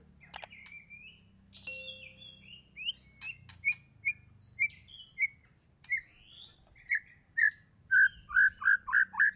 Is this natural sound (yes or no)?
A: yes